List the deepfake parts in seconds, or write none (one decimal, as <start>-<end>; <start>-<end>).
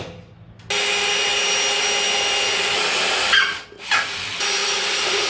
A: 4.6-5.3